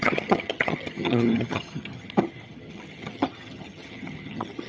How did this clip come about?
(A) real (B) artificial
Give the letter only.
B